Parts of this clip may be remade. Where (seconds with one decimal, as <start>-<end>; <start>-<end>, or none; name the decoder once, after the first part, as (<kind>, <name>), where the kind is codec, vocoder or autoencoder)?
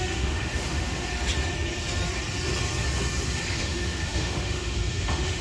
0.0-1.1 (autoencoder, DAC-VAE); 3.6-5.4